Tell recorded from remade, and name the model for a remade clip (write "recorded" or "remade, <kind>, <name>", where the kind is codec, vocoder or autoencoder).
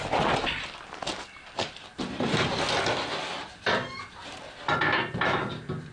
recorded